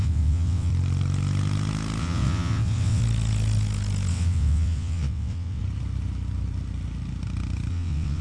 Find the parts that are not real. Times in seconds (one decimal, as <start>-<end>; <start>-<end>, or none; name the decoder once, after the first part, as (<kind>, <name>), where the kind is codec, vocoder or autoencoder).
0.0-0.7 (vocoder, WaveNeXt); 2.0-3.0; 4.1-5.6; 7.7-8.2